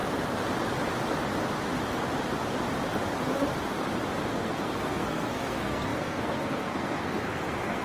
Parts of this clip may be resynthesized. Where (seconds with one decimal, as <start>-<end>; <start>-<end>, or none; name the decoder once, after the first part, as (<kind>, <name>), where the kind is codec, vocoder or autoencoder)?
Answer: 4.3-7.8 (codec, SNAC)

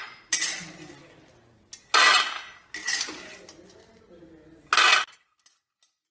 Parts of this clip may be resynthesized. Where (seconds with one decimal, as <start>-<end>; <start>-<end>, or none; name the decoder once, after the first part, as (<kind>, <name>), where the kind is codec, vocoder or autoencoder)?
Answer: none